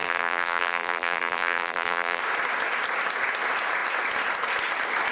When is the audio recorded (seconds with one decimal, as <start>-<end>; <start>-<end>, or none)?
2.2-5.1